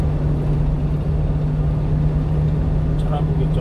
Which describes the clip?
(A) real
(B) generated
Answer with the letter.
A